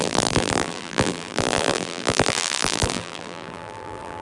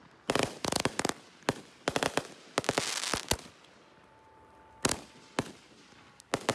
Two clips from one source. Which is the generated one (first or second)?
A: first